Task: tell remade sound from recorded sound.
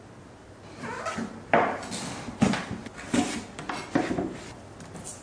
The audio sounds recorded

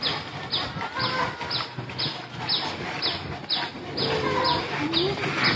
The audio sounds recorded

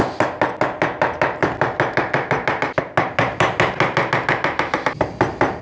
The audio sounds recorded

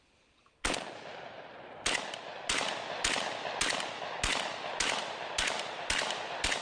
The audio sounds recorded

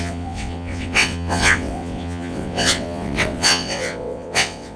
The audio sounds remade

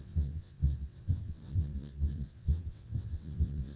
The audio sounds remade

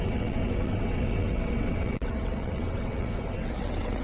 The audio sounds remade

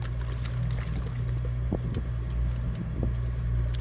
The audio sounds recorded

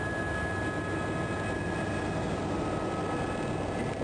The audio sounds recorded